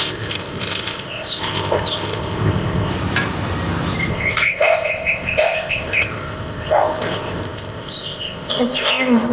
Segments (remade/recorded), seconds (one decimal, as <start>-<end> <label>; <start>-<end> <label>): 0.0-2.9 remade; 2.9-4.1 recorded; 4.1-9.3 remade